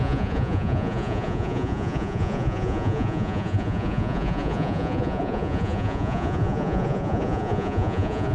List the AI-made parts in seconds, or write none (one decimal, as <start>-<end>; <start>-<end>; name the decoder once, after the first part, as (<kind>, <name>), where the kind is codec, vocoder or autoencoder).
0.0-8.3 (vocoder, Vocos)